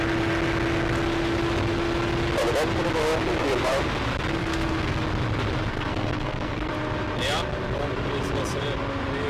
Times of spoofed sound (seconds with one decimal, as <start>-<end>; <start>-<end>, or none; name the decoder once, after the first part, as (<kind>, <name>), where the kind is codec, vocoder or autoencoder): 4.4-5.0 (codec, SNAC); 5.7-6.7